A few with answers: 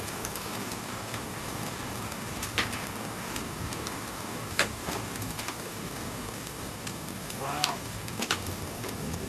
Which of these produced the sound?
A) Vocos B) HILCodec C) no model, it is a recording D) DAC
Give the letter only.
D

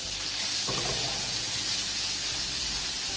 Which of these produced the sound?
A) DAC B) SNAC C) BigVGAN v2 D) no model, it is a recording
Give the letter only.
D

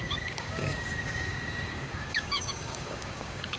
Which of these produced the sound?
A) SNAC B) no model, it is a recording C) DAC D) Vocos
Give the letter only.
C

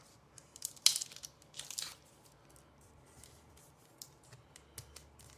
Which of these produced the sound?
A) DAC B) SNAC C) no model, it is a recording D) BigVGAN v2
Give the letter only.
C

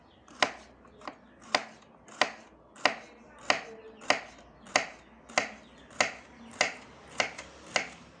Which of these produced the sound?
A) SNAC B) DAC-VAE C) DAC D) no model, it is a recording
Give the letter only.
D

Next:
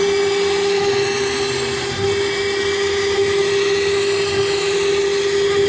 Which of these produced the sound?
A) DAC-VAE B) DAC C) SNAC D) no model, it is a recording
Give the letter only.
D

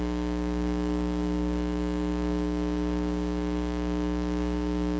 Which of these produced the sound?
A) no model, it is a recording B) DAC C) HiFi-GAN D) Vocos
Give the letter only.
B